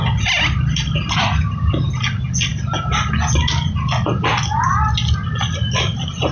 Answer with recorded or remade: recorded